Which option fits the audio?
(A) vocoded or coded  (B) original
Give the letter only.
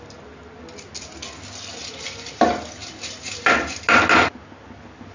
B